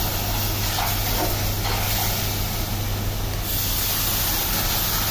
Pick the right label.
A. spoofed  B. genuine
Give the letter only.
B